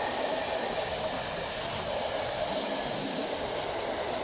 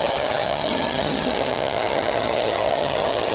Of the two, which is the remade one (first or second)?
second